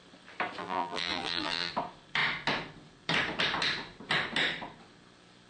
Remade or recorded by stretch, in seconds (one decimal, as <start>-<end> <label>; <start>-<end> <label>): 0.0-0.6 recorded; 0.6-1.7 remade; 1.7-5.5 recorded